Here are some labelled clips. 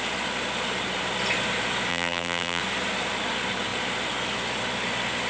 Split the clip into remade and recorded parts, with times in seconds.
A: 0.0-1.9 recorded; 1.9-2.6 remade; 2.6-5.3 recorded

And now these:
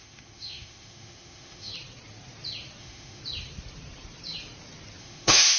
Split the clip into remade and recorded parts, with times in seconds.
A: 0.0-1.7 remade; 1.7-2.8 recorded; 2.8-3.2 remade; 3.2-5.0 recorded; 5.0-5.6 remade